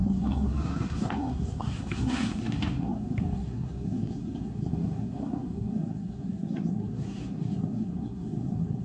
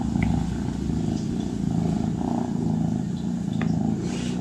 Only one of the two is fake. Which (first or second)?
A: first